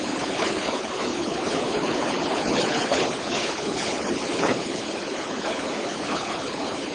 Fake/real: fake